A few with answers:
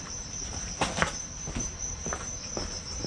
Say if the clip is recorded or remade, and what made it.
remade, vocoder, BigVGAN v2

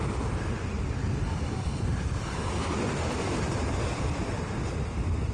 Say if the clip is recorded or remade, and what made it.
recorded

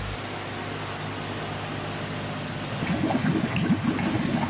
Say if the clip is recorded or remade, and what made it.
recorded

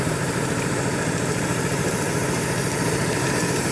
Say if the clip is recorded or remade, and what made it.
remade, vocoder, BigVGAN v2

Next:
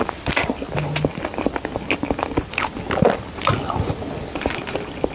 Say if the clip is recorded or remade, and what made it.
recorded